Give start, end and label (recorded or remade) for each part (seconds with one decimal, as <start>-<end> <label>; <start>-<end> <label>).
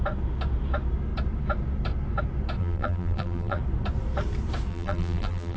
0.0-2.6 recorded; 2.6-3.6 remade; 3.6-4.7 recorded; 4.7-5.6 remade